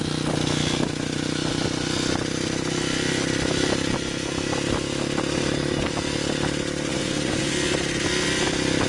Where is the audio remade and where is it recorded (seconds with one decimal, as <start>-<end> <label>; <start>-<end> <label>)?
0.0-6.9 recorded; 6.9-7.5 remade; 7.5-8.9 recorded